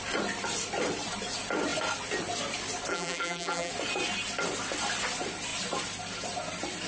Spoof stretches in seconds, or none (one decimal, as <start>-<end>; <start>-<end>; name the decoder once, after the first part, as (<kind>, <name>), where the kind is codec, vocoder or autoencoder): 2.9-3.7 (vocoder, BigVGAN v2)